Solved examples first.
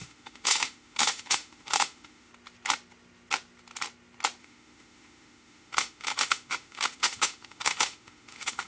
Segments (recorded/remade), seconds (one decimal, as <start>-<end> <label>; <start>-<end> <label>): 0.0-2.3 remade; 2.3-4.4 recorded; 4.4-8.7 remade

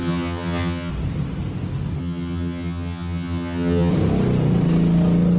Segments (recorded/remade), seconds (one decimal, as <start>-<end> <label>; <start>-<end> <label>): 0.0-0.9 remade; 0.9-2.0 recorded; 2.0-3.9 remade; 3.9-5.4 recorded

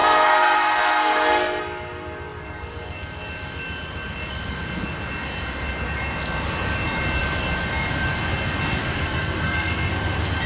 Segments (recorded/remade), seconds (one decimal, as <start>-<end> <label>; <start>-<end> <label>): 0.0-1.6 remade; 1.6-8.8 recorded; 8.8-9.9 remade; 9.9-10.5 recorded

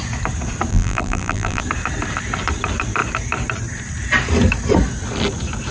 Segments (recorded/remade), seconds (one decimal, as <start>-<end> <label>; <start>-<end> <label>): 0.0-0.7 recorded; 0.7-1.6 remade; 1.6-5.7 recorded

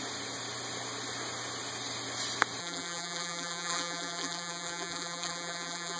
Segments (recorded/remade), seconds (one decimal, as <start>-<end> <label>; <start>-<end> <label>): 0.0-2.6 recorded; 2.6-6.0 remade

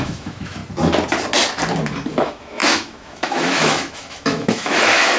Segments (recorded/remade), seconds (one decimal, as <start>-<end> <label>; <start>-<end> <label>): 0.0-0.6 remade; 0.6-2.2 recorded; 2.2-5.2 remade